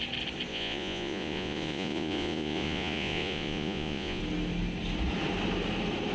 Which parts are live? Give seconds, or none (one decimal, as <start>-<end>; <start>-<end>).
0.0-0.5; 4.2-6.1